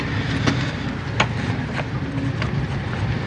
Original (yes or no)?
yes